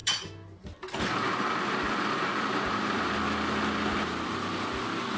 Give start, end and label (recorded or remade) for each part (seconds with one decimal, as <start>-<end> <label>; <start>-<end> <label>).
0.0-3.1 remade; 3.1-5.2 recorded